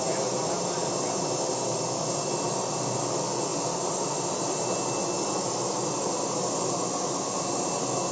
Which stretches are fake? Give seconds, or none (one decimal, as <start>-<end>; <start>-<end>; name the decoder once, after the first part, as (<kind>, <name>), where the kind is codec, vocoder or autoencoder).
none